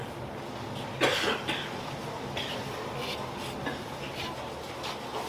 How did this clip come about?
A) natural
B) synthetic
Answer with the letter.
A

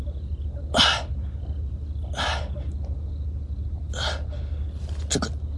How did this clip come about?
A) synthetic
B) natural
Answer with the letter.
B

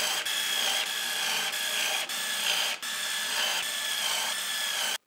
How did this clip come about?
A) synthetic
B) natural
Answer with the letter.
B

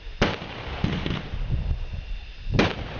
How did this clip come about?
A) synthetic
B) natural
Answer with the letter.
B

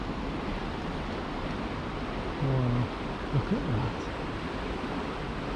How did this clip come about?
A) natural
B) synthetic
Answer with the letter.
A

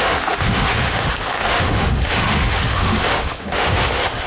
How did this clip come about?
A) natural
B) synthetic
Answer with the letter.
B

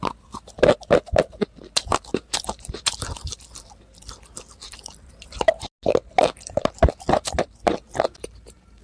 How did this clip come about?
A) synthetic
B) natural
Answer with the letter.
B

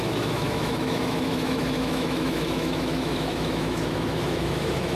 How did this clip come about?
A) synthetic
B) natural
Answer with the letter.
A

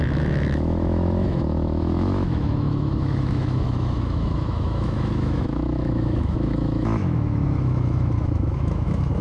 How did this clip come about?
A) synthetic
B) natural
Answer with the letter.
A